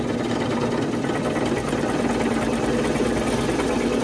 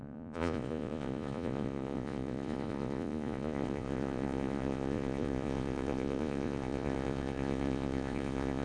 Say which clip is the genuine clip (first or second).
first